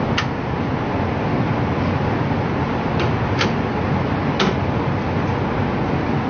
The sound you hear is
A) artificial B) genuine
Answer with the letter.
B